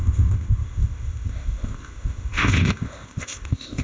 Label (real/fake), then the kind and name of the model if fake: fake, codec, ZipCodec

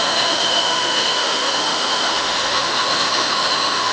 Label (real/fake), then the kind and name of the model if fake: fake, autoencoder, DAC-VAE